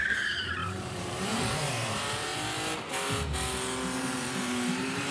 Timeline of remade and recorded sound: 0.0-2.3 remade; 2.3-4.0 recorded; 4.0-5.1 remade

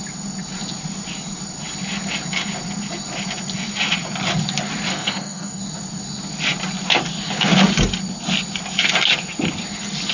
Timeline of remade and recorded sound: 0.0-4.9 recorded; 4.9-5.6 remade; 5.6-10.1 recorded

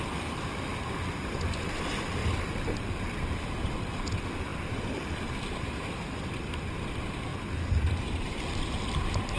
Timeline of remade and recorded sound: 0.0-9.4 recorded

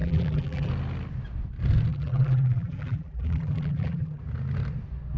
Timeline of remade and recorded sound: 0.0-0.7 remade; 0.7-1.9 recorded; 1.9-4.2 remade; 4.2-5.2 recorded

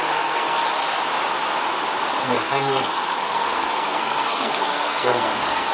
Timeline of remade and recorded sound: 0.0-0.6 remade; 0.6-2.2 recorded; 2.2-5.7 remade

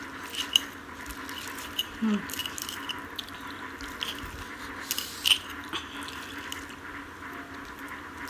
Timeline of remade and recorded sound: 0.0-8.3 recorded

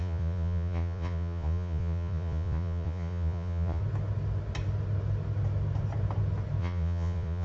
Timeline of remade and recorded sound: 0.0-3.8 remade; 3.8-6.6 recorded; 6.6-7.4 remade

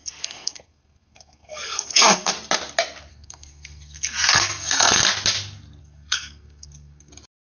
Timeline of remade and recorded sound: 0.0-2.3 remade; 2.3-3.1 recorded; 3.1-5.0 remade; 5.0-5.8 recorded; 5.8-7.1 remade; 7.1-7.5 recorded